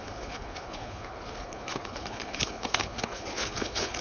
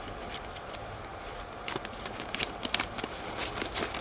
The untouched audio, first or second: second